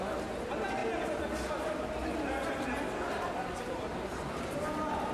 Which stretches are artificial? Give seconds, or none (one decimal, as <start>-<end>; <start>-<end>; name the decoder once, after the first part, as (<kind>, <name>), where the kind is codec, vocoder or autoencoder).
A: none